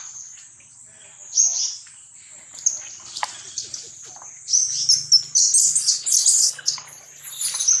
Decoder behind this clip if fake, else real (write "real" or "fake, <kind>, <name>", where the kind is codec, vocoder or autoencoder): real